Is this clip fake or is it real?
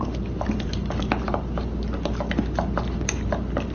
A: real